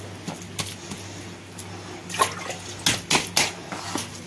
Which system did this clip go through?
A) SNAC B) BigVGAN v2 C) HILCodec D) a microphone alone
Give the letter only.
D